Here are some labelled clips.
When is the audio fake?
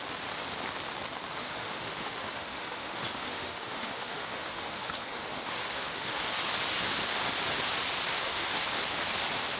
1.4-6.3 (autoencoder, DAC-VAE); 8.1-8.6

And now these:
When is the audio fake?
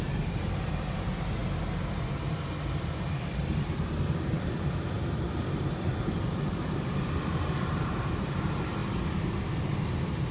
0.0-1.4 (vocoder, BigVGAN v2); 4.2-5.9; 6.5-8.8; 9.8-10.3